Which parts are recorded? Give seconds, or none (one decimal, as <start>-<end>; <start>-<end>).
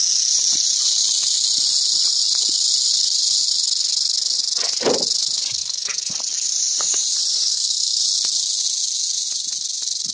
0.0-5.6; 6.1-7.5; 8.0-10.1